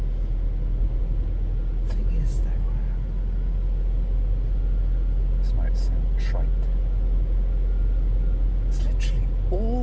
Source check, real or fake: real